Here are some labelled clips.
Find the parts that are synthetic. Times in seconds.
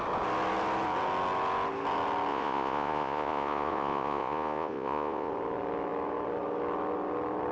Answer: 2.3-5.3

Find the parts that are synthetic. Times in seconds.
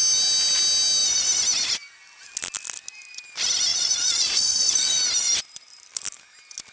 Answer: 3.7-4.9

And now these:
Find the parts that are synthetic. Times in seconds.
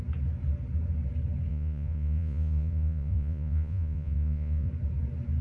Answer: 1.5-4.7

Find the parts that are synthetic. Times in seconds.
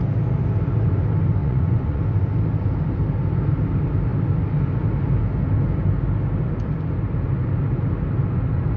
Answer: 1.4-2.0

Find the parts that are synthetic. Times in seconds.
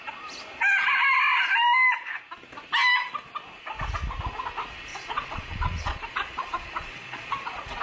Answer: 4.9-7.8